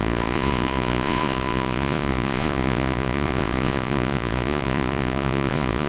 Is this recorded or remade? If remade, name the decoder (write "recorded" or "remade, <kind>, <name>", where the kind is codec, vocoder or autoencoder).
remade, vocoder, Vocos